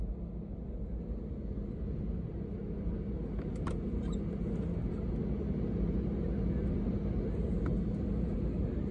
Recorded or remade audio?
recorded